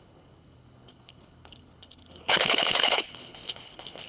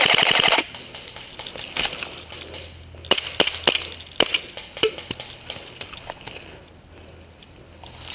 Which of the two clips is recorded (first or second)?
second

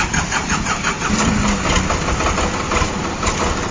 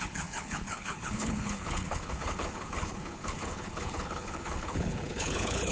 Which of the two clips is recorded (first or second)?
first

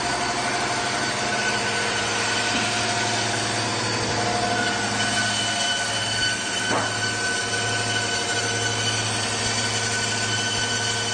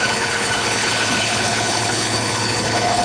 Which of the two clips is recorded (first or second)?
first